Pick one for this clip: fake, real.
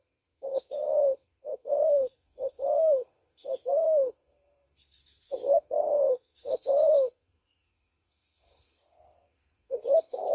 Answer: fake